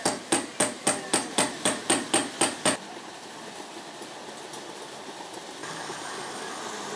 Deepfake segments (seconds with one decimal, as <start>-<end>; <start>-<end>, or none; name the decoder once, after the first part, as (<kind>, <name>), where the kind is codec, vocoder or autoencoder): 5.6-6.6 (codec, DAC)